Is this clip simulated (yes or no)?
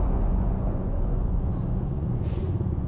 yes